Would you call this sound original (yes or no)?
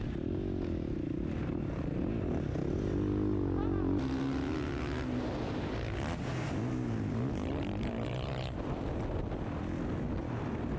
yes